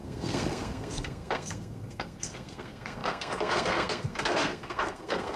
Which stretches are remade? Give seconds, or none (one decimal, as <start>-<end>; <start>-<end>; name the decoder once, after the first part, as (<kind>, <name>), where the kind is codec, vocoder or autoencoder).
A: 0.0-5.4 (codec, SNAC)